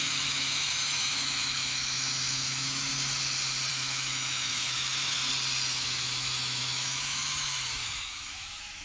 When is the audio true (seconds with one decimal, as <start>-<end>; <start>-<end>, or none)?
2.9-3.7; 5.2-5.7